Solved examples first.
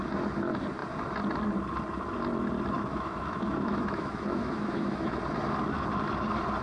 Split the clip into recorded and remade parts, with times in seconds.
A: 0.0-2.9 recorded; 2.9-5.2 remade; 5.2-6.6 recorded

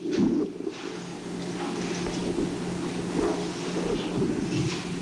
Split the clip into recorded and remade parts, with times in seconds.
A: 0.0-5.0 recorded

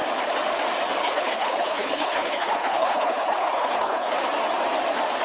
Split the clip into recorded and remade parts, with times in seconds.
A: 0.0-1.0 recorded; 1.0-4.1 remade; 4.1-5.2 recorded

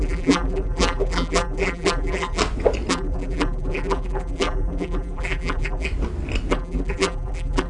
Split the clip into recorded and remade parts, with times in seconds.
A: 0.0-2.4 remade; 2.4-2.9 recorded; 2.9-5.9 remade; 5.9-6.5 recorded; 6.5-7.7 remade

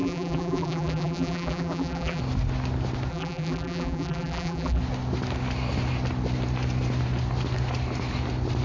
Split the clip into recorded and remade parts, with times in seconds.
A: 0.0-2.2 remade; 2.2-3.1 recorded; 3.1-4.8 remade; 4.8-8.6 recorded

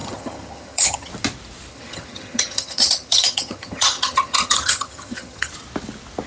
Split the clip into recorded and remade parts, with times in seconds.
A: 0.0-1.1 remade; 1.1-1.7 recorded; 1.7-5.5 remade; 5.5-6.3 recorded